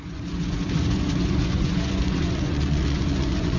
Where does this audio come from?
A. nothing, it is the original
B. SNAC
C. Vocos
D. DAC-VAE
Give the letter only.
C